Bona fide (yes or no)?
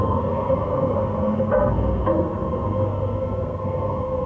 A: no